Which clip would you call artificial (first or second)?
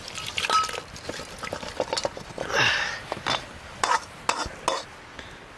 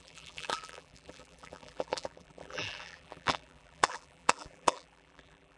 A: second